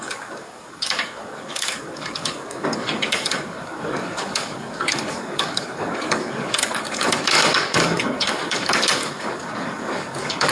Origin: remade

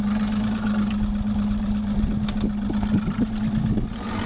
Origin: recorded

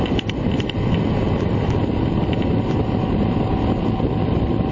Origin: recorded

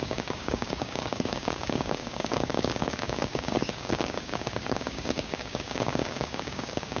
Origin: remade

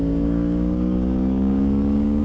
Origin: remade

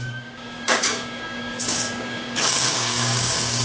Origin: remade